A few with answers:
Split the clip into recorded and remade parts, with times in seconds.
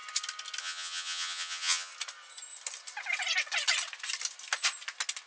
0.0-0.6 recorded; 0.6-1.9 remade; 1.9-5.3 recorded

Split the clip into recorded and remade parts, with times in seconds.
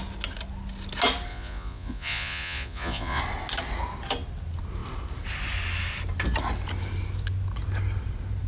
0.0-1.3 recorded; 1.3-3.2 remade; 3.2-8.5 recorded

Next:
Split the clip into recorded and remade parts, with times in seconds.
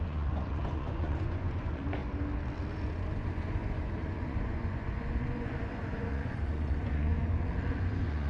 0.0-2.0 remade; 2.0-2.7 recorded; 2.7-7.1 remade; 7.1-7.8 recorded; 7.8-8.3 remade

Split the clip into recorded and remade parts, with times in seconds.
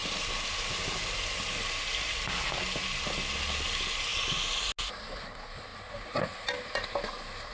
0.0-7.5 recorded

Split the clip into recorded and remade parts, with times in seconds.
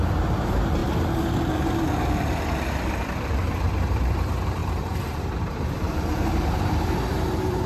0.0-0.8 remade; 0.8-2.9 recorded; 2.9-7.7 remade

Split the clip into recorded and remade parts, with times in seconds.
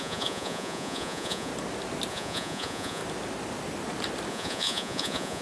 0.0-1.5 remade; 1.5-2.1 recorded; 2.1-3.0 remade; 3.0-4.3 recorded; 4.3-5.4 remade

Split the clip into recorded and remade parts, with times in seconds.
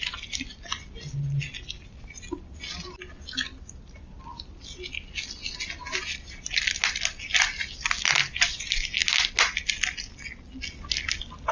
0.0-11.5 recorded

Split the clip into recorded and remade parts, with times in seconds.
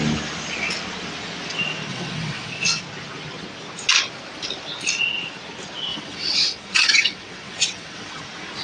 0.0-1.9 recorded; 1.9-2.8 remade; 2.8-5.9 recorded; 5.9-8.2 remade; 8.2-8.6 recorded